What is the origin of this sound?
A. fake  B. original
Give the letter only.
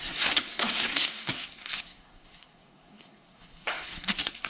A